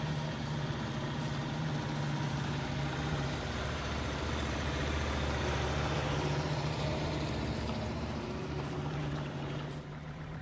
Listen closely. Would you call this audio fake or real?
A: fake